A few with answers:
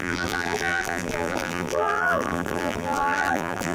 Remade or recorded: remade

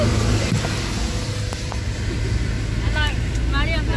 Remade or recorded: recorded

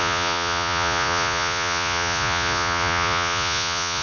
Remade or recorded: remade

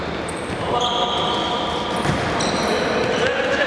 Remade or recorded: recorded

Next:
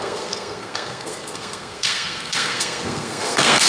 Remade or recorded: remade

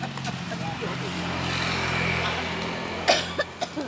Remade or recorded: recorded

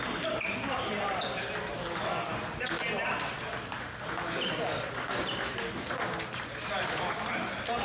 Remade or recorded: recorded